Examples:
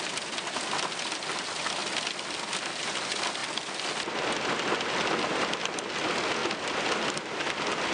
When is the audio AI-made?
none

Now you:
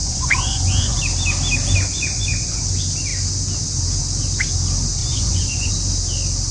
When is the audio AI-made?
0.0-1.0 (vocoder, Vocos); 1.9-2.6; 5.0-5.7

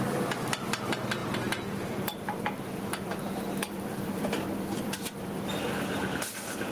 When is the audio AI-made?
0.0-6.7 (vocoder, BigVGAN v2)

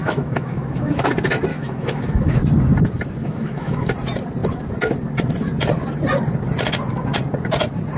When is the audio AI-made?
0.0-1.1 (autoencoder, DAC-VAE); 1.5-2.4; 3.2-3.9

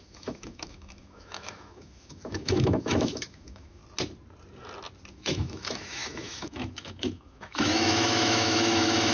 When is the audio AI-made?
0.0-3.8 (autoencoder, DAC-VAE); 5.1-9.1